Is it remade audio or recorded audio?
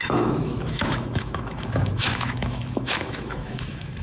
remade